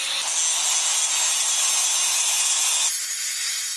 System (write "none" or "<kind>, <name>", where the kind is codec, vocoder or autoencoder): none